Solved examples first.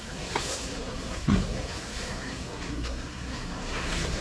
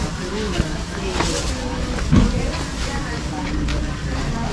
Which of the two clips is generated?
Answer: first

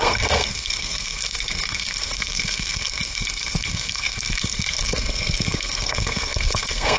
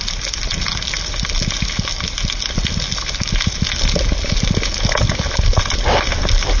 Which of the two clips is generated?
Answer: first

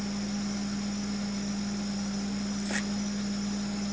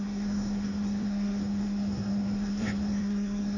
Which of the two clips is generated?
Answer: second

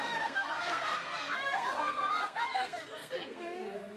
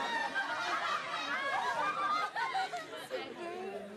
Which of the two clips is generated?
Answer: first